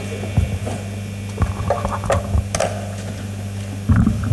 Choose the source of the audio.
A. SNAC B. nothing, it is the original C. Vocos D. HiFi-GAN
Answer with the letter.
B